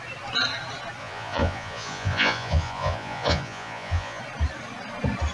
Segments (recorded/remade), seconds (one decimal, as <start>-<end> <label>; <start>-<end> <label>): 0.0-1.0 recorded; 1.0-4.2 remade; 4.2-5.3 recorded